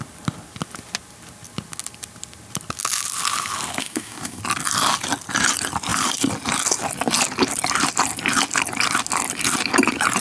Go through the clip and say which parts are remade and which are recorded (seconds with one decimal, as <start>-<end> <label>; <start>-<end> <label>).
0.0-3.8 recorded; 3.8-4.4 remade; 4.4-10.2 recorded